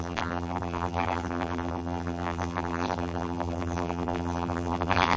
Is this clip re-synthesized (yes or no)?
yes